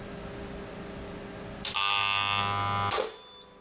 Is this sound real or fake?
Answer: real